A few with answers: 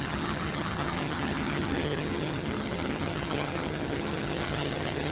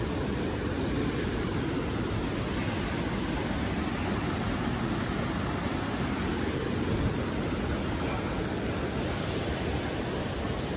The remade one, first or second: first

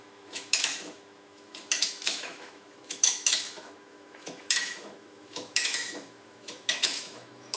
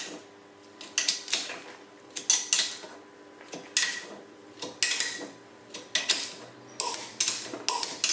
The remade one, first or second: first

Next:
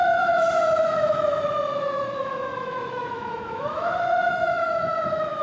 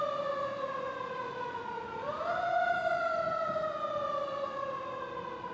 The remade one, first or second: first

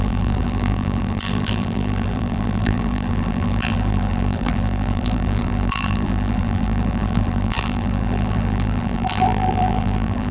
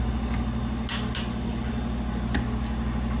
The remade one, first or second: first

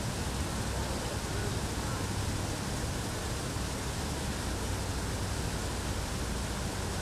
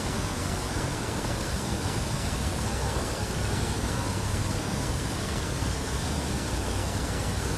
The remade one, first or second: second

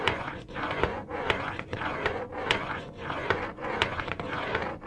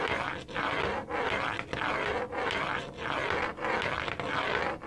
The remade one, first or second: first